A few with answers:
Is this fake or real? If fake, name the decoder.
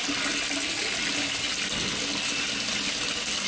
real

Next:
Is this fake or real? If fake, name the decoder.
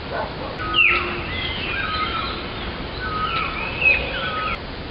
real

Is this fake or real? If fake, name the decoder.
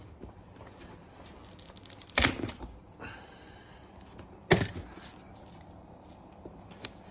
real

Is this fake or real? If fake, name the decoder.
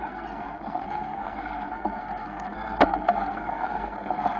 fake, codec, SNAC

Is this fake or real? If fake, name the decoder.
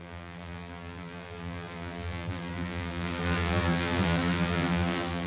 fake, vocoder, BigVGAN v2